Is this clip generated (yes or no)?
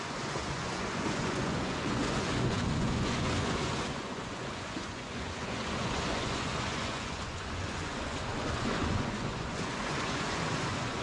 yes